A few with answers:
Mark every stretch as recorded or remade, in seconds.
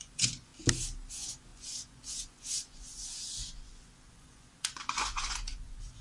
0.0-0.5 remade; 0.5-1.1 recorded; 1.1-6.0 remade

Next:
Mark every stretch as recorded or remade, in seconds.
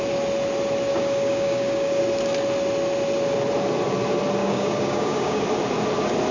0.0-0.9 recorded; 0.9-2.0 remade; 2.0-4.4 recorded; 4.4-5.4 remade; 5.4-6.3 recorded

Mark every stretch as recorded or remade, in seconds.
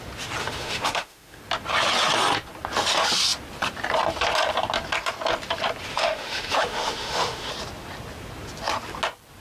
0.0-0.4 recorded; 0.4-1.4 remade; 1.4-5.9 recorded; 5.9-7.5 remade; 7.5-9.4 recorded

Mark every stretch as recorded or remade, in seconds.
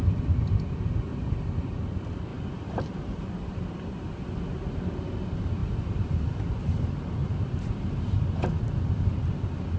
0.0-1.1 recorded; 1.1-1.8 remade; 1.8-2.3 recorded; 2.3-3.0 remade; 3.0-5.6 recorded; 5.6-6.7 remade; 6.7-7.2 recorded; 7.2-8.1 remade; 8.1-9.8 recorded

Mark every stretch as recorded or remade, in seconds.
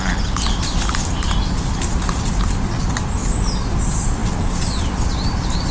0.0-5.7 recorded